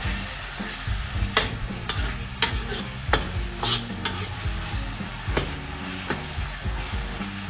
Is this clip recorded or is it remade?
recorded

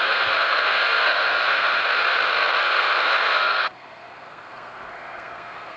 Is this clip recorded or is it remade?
remade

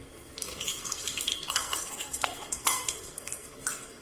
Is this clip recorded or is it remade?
remade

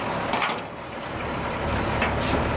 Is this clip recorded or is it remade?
remade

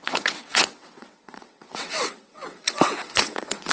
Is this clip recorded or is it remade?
remade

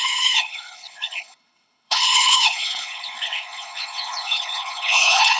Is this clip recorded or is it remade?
remade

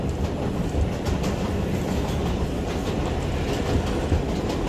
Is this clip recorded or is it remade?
recorded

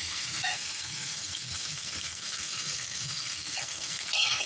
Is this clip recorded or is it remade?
remade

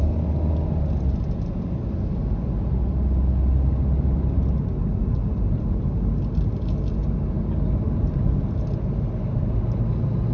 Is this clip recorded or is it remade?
recorded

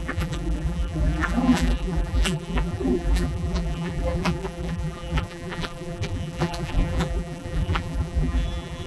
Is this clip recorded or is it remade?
remade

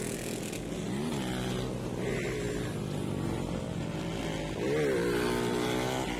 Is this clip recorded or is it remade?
recorded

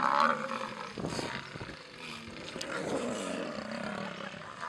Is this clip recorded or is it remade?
recorded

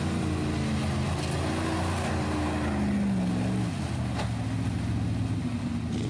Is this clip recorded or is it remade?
recorded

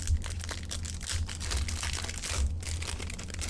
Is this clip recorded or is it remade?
recorded